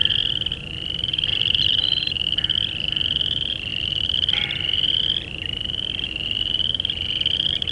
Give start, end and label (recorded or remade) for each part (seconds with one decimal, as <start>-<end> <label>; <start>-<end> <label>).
0.0-2.1 remade; 2.1-3.7 recorded; 3.7-6.4 remade; 6.4-7.7 recorded